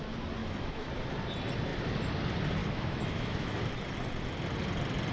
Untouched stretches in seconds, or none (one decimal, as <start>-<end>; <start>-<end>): 0.0-0.4; 0.9-2.6; 3.6-5.1